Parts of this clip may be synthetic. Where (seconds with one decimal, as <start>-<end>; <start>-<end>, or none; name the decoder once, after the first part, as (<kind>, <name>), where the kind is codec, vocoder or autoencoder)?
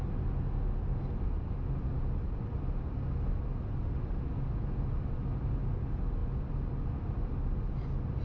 none